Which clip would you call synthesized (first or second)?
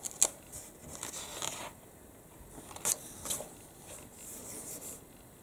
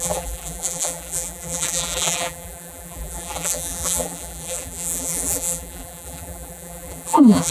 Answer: second